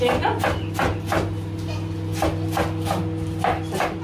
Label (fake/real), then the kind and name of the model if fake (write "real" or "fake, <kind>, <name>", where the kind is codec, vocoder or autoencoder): real